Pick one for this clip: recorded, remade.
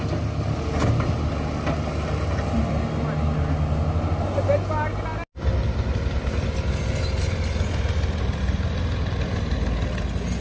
recorded